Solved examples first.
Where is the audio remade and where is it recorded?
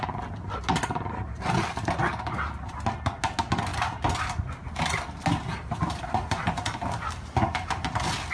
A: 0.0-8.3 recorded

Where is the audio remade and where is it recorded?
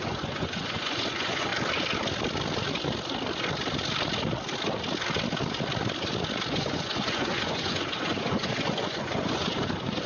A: 0.0-1.5 remade; 1.5-6.5 recorded; 6.5-10.1 remade